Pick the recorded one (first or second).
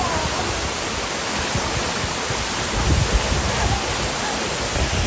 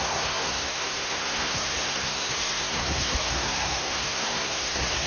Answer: first